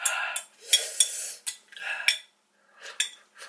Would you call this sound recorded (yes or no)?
yes